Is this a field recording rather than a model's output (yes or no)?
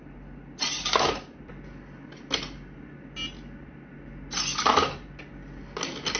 yes